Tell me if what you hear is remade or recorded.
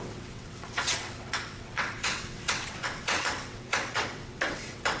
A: remade